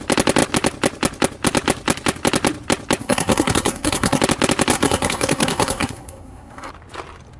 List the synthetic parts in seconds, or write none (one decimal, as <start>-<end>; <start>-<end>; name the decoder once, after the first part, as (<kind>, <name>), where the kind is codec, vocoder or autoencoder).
3.0-4.2 (codec, SNAC); 4.7-6.7